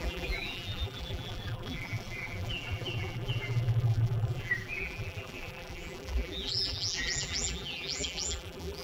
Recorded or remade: remade